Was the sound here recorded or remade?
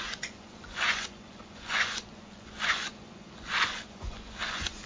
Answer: remade